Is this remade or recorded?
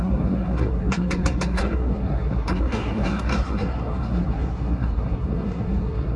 remade